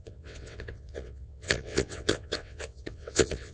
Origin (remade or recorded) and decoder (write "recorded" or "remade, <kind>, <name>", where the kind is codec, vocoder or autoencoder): remade, vocoder, WaveNeXt